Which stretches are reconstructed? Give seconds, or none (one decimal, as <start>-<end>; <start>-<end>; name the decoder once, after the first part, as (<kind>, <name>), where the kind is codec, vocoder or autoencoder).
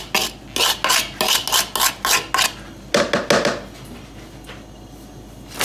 none